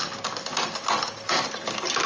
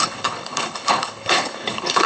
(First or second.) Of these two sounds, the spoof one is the second